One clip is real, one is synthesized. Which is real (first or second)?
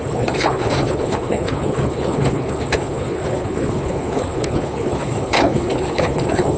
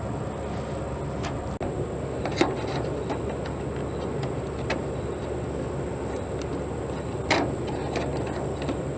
second